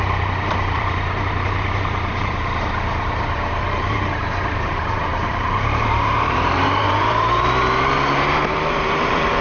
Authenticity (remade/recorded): remade